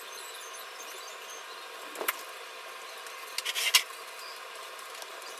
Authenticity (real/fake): real